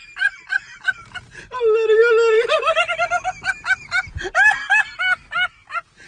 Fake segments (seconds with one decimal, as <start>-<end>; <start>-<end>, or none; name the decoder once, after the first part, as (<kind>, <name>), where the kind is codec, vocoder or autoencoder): none